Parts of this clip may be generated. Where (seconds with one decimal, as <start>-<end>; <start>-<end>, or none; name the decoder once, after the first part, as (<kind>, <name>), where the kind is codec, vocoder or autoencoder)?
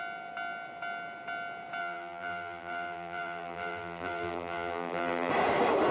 1.8-5.3 (vocoder, BigVGAN v2)